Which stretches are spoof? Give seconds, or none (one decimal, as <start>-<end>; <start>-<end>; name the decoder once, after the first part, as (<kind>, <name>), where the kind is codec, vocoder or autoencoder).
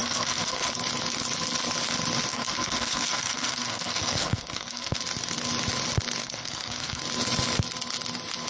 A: 0.0-0.7 (codec, SNAC); 2.3-5.0; 6.2-7.0